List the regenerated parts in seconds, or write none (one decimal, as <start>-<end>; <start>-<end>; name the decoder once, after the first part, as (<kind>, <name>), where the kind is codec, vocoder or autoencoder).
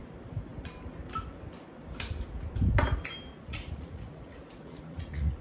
3.3-5.4 (vocoder, Vocos)